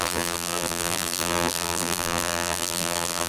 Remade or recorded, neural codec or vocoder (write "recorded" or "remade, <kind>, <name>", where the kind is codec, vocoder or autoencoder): remade, vocoder, BigVGAN v2